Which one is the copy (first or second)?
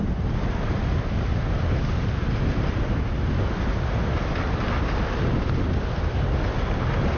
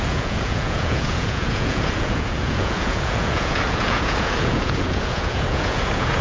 second